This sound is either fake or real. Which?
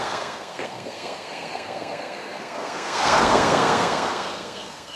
fake